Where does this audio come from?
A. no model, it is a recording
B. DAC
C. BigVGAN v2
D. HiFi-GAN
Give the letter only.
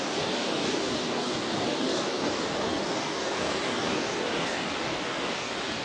B